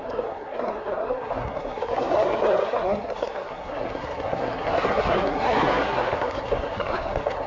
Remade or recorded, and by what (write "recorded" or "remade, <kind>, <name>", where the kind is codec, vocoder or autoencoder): remade, codec, SNAC